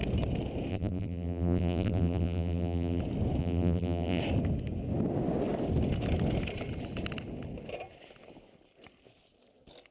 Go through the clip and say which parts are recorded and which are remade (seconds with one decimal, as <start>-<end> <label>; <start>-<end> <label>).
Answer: 0.0-0.7 recorded; 0.7-3.0 remade; 3.0-3.4 recorded; 3.4-4.2 remade; 4.2-9.9 recorded